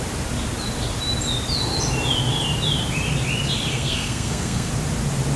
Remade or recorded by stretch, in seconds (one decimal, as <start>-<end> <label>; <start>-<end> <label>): 0.0-3.7 recorded; 3.7-4.7 remade; 4.7-5.4 recorded